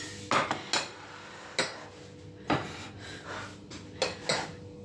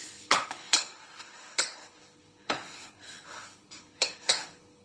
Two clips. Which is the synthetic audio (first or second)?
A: second